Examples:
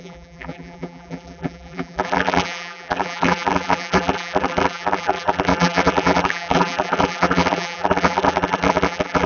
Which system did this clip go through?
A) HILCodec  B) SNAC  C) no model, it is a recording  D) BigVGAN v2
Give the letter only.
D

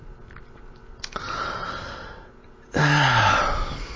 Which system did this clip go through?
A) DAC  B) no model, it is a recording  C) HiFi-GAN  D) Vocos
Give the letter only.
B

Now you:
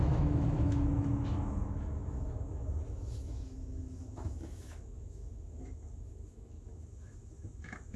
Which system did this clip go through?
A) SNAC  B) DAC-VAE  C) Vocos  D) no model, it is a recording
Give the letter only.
B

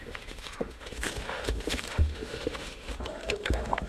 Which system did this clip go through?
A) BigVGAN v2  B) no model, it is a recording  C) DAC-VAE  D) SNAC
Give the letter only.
C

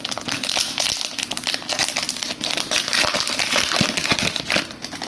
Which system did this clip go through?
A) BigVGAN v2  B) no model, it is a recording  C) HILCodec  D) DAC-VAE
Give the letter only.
B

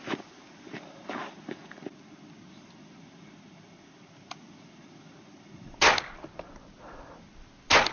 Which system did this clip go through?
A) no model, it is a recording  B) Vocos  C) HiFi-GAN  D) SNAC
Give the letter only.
A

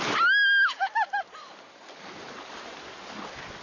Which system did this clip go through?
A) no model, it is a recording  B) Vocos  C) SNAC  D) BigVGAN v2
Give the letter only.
A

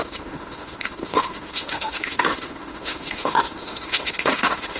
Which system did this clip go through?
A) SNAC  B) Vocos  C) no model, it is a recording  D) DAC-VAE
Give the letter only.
D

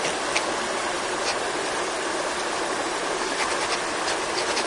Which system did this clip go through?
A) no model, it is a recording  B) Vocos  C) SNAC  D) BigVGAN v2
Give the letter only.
A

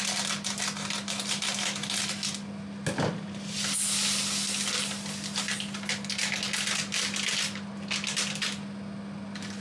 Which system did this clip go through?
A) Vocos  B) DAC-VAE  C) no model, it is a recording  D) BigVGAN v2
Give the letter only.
C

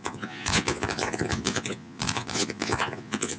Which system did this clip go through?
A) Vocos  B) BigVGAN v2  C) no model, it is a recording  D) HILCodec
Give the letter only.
A